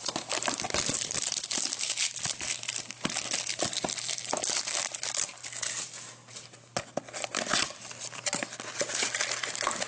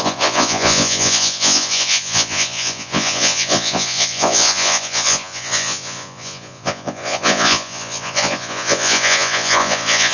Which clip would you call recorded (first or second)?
first